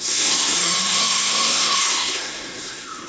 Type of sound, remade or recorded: remade